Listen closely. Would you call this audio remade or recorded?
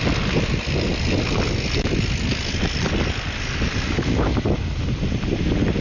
recorded